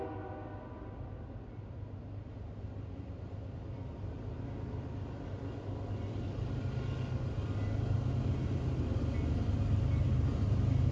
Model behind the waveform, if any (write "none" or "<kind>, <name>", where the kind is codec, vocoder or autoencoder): none